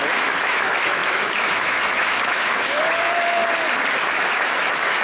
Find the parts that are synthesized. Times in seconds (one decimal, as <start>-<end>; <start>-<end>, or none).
0.0-3.4; 3.9-5.0